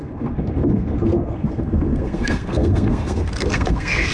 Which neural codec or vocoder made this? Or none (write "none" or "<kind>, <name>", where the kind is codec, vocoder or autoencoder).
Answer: codec, SNAC